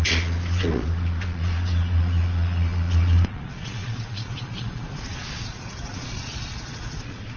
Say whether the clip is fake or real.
fake